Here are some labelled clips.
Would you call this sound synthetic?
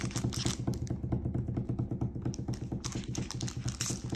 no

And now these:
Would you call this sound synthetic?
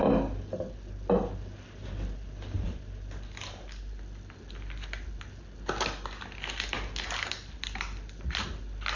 no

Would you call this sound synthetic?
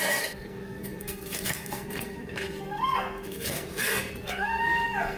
yes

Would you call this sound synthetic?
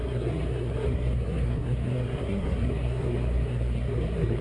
yes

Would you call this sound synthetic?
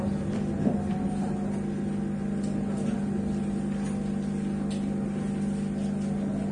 no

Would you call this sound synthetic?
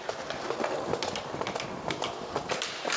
no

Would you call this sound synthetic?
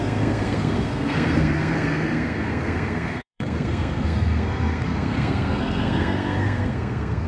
yes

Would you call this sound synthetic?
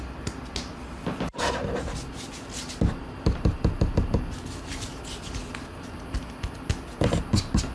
no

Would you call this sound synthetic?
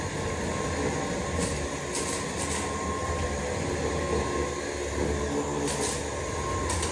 no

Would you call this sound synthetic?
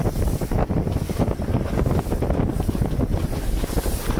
no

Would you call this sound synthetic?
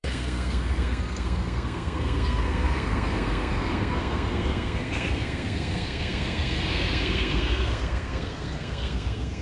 yes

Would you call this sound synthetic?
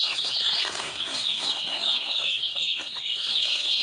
yes